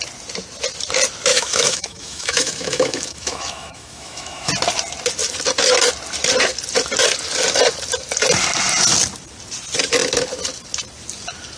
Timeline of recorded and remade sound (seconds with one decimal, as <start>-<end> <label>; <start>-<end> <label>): 0.0-1.3 recorded; 1.3-4.5 remade; 4.5-11.6 recorded

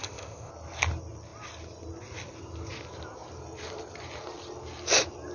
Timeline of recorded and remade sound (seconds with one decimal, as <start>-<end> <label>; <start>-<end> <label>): 0.0-0.5 remade; 0.5-5.3 recorded

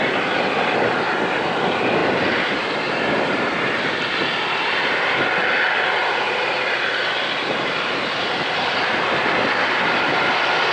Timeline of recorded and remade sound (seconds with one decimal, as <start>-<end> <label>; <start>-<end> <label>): 0.0-2.0 recorded; 2.0-3.7 remade; 3.7-6.0 recorded; 6.0-6.9 remade; 6.9-7.7 recorded; 7.7-9.0 remade; 9.0-10.7 recorded

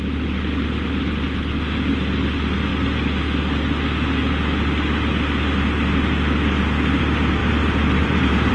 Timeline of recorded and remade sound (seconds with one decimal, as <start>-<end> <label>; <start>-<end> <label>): 0.0-7.4 recorded; 7.4-8.5 remade

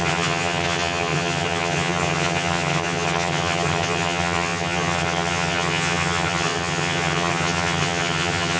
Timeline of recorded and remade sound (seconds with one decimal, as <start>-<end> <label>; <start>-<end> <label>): 0.0-8.6 remade

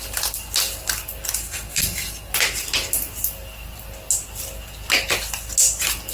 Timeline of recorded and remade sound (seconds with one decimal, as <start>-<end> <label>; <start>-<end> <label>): 0.0-1.4 recorded; 1.4-2.3 remade; 2.3-6.1 recorded